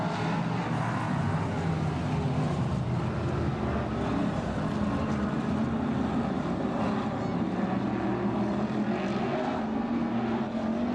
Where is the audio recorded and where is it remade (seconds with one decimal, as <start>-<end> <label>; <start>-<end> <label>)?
0.0-9.2 recorded; 9.2-10.4 remade; 10.4-10.9 recorded